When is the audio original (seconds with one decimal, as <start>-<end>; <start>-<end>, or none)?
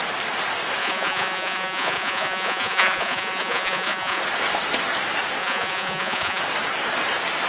0.0-0.8; 4.2-5.4; 6.4-7.5